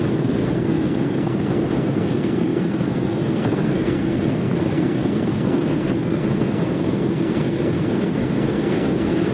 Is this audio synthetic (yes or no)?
yes